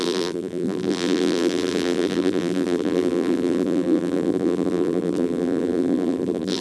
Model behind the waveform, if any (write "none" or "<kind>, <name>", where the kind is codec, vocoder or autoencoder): vocoder, BigVGAN v2